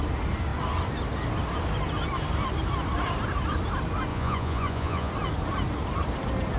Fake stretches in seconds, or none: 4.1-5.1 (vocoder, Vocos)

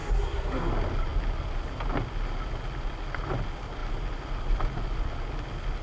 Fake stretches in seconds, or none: 0.0-0.7 (codec, SNAC)

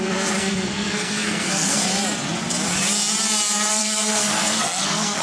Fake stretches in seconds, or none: 0.0-1.9 (codec, SNAC); 3.7-5.2